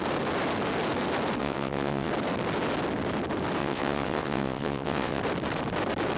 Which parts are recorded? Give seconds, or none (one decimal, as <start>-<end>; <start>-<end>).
0.0-1.4; 2.1-3.6; 5.2-6.2